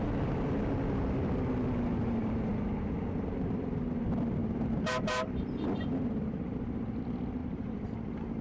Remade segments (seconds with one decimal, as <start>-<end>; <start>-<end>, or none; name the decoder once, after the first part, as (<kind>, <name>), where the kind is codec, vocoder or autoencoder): 1.9-2.5 (vocoder, BigVGAN v2); 4.4-7.0; 7.4-8.4